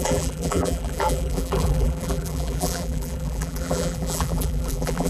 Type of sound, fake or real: fake